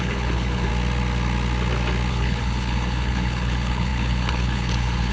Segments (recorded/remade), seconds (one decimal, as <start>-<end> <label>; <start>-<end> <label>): 0.0-0.7 remade; 0.7-2.1 recorded; 2.1-5.1 remade

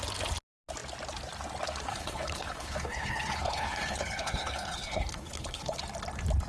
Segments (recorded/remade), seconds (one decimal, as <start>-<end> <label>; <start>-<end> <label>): 0.0-1.9 recorded; 1.9-5.8 remade; 5.8-6.5 recorded

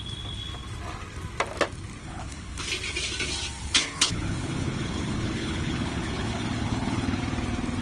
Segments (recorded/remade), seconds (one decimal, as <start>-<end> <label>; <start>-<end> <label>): 0.0-2.0 recorded; 2.0-2.6 remade; 2.6-3.6 recorded; 3.6-7.2 remade; 7.2-7.8 recorded

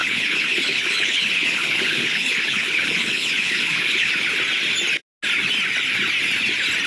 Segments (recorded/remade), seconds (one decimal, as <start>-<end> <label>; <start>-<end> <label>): 0.0-4.1 remade; 4.1-6.9 recorded

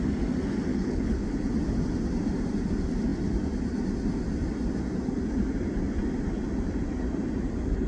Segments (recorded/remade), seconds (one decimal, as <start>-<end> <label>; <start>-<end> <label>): 0.0-0.7 recorded; 0.7-1.3 remade; 1.3-7.9 recorded

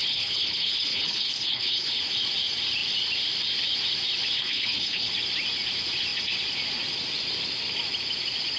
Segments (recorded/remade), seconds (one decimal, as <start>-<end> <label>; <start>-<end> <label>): 0.0-2.0 remade; 2.0-4.4 recorded; 4.4-5.1 remade; 5.1-8.6 recorded

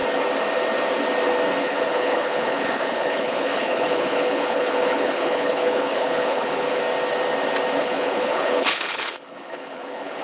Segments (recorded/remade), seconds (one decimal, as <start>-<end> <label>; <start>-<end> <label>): 0.0-1.6 recorded; 1.6-6.8 remade; 6.8-7.8 recorded; 7.8-10.2 remade

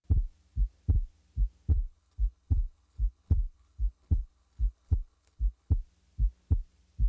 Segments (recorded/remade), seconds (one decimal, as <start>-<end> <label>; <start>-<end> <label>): 0.0-1.7 recorded; 1.7-5.7 remade; 5.7-7.1 recorded